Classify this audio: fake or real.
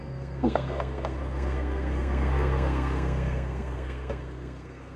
fake